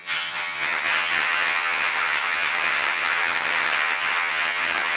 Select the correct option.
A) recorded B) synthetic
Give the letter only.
B